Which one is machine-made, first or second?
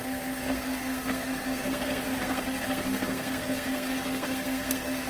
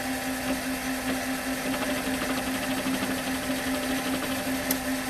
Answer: first